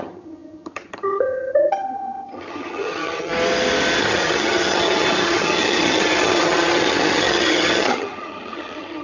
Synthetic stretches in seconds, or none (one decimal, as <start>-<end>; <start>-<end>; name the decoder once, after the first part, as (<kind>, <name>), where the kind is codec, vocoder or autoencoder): 0.0-3.3 (vocoder, HiFi-GAN); 4.0-9.0